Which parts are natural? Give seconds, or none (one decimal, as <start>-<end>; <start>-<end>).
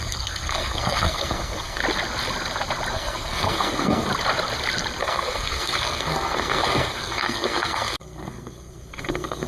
1.8-2.9; 4.1-5.0